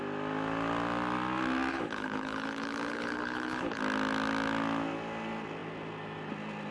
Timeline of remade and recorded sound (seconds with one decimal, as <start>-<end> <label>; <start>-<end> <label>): 0.0-1.7 recorded; 1.7-3.8 remade; 3.8-6.7 recorded